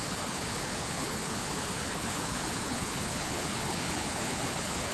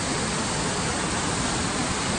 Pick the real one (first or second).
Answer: second